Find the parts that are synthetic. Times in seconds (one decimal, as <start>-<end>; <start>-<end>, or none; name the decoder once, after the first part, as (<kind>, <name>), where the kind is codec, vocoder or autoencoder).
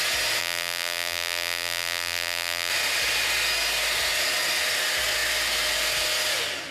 0.4-2.7 (vocoder, BigVGAN v2)